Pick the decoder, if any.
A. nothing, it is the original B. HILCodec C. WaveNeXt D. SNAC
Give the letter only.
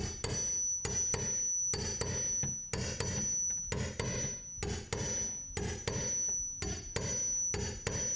A